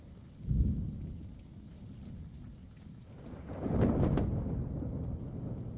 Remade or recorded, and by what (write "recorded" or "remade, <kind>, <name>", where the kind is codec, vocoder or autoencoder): recorded